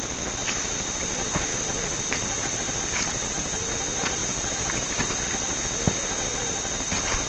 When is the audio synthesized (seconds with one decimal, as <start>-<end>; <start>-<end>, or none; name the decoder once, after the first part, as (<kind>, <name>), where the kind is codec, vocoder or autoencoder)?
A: 1.5-3.7 (vocoder, BigVGAN v2); 4.2-5.0